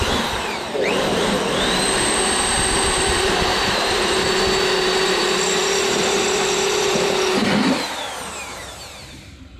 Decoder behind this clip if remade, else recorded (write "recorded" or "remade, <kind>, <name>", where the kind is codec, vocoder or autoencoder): remade, vocoder, BigVGAN v2